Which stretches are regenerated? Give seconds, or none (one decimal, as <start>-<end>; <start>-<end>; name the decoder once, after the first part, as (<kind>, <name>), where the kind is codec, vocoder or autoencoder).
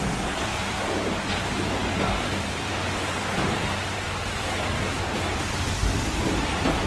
0.0-6.9 (vocoder, BigVGAN v2)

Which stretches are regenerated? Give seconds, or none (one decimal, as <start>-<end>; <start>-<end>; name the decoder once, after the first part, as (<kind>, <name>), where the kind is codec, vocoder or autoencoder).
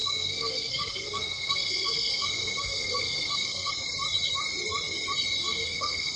0.0-3.7 (codec, SNAC); 5.4-6.2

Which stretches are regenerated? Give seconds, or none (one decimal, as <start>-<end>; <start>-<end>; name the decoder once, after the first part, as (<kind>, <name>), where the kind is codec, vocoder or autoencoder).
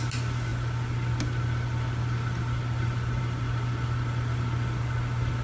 none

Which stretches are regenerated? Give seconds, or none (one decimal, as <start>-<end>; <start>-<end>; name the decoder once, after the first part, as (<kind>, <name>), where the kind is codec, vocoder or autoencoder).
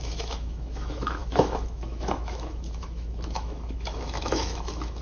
0.0-5.0 (autoencoder, DAC-VAE)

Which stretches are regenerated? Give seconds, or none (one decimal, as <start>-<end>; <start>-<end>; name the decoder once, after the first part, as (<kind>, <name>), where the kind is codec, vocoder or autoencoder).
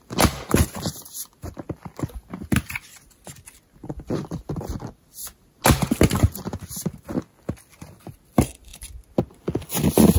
none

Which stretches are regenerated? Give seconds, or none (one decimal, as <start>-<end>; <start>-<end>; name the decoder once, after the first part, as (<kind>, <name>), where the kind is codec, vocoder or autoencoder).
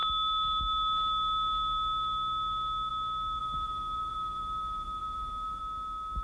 3.4-5.6 (vocoder, BigVGAN v2)